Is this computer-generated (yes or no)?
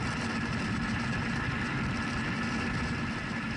yes